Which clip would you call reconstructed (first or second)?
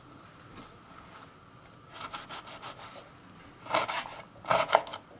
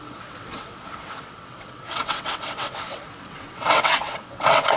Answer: second